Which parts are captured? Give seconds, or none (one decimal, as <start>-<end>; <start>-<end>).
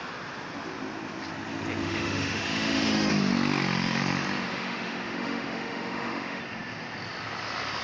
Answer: 0.0-1.8; 3.1-4.5; 6.4-7.8